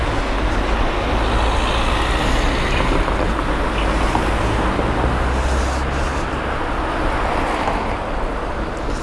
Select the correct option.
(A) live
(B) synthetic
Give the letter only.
A